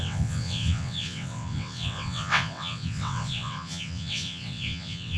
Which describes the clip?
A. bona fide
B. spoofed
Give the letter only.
B